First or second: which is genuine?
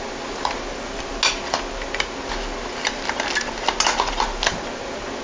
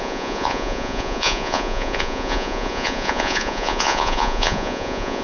first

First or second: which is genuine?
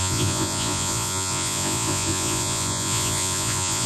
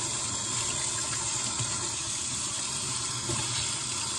second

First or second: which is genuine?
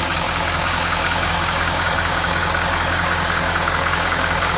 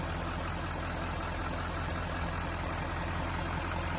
second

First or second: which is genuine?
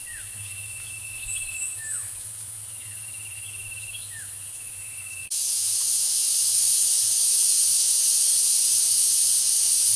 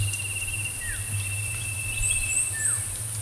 second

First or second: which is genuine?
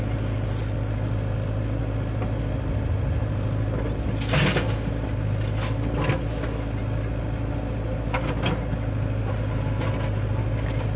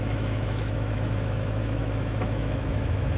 first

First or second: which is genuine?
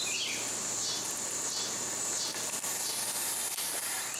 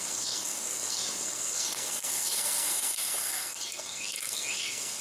first